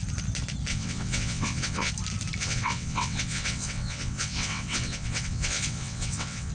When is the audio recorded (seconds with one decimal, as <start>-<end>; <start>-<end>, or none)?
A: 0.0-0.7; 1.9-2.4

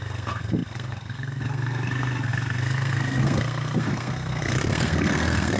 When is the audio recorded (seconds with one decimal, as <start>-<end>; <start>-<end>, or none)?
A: none

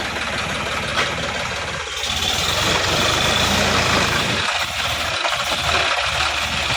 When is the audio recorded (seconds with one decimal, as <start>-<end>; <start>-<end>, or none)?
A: 0.0-0.9; 1.9-2.4; 4.6-6.8

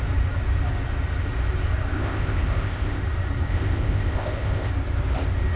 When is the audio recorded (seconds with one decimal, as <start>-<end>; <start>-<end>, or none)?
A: 0.0-1.9; 3.0-3.5; 4.7-5.6

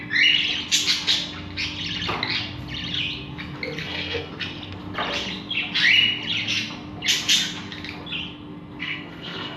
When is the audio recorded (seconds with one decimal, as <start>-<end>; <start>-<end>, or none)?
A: 0.0-3.8; 4.3-8.8